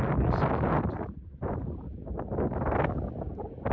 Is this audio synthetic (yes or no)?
no